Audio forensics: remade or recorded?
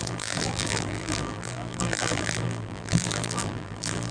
remade